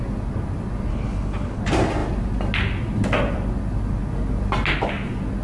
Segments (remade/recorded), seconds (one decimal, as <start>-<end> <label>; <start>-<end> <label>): 0.0-0.9 recorded; 0.9-1.6 remade; 1.6-5.4 recorded